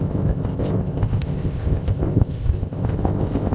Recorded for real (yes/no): no